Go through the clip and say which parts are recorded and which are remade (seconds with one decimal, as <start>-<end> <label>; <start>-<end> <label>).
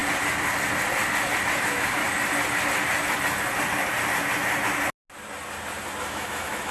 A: 0.0-1.6 recorded; 1.6-2.0 remade; 2.0-6.0 recorded; 6.0-6.7 remade